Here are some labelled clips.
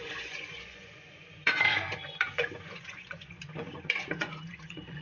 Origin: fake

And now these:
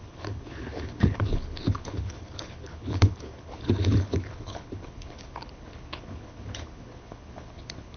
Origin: fake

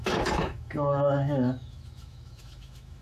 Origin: fake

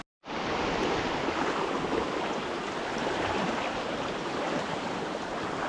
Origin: real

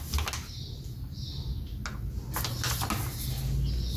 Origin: real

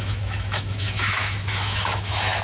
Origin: fake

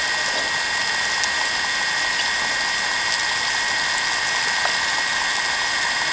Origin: real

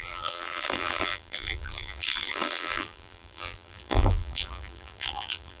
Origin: fake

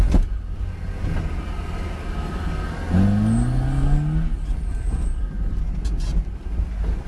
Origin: real